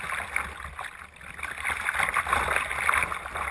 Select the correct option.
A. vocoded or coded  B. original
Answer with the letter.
B